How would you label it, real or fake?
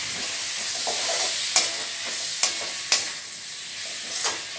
real